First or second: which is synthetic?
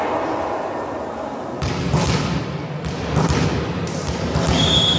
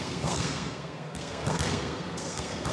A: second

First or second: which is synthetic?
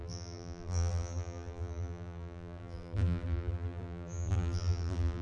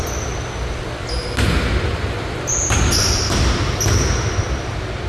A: first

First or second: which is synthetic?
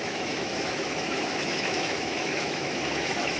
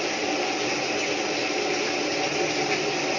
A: first